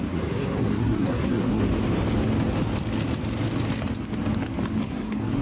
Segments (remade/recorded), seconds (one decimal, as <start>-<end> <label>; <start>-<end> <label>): 0.0-1.6 remade; 1.6-4.8 recorded; 4.8-5.4 remade